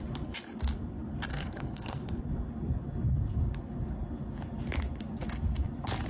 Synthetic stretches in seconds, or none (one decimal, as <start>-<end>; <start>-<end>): 1.3-2.2